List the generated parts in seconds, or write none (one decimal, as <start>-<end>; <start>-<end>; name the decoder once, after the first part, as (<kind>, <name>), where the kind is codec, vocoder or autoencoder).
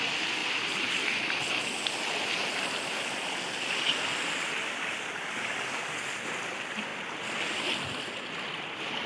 4.6-6.0 (codec, DAC)